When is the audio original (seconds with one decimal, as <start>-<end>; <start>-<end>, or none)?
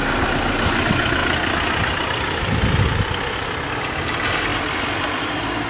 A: 0.0-1.2; 2.5-5.7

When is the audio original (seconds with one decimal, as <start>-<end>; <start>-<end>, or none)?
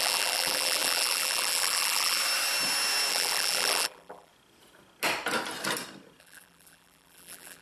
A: 2.2-3.1; 4.3-6.2